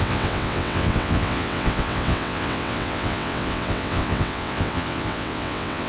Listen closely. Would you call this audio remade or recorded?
remade